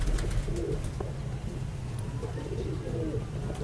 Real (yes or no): yes